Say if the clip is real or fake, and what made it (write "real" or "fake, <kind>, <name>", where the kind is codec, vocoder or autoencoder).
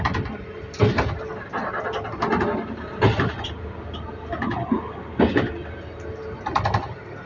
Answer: real